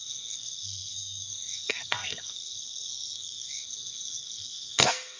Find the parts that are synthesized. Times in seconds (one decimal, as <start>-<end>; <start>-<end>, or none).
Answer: 0.0-5.2